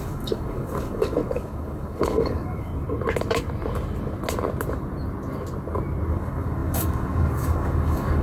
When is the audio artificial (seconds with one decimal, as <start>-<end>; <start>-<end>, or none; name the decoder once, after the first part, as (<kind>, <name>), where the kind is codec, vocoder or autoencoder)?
0.0-2.7 (codec, DAC); 6.1-8.2